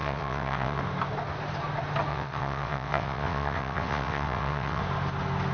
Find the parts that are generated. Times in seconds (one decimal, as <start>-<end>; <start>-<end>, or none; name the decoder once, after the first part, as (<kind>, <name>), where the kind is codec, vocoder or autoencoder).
0.0-0.8 (vocoder, WaveNeXt); 2.1-4.8